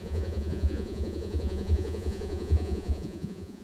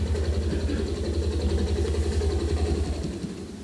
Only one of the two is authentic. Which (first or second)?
second